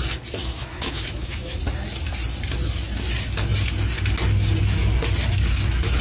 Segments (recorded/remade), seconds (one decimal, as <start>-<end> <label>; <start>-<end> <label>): 0.0-0.4 recorded; 0.4-1.6 remade; 1.6-6.0 recorded